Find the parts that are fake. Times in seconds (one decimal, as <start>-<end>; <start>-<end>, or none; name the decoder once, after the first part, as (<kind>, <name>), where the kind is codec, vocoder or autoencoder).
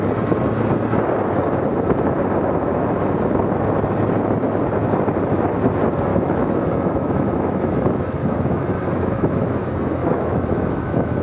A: 6.1-9.6 (autoencoder, DAC-VAE); 10.0-11.2